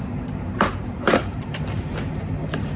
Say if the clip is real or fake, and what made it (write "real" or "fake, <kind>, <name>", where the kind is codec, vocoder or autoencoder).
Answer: fake, vocoder, BigVGAN v2